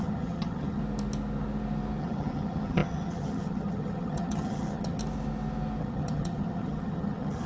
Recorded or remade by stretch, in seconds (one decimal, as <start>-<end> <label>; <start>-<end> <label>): 0.0-0.8 remade; 0.8-2.0 recorded; 2.0-5.0 remade; 5.0-5.8 recorded; 5.8-7.5 remade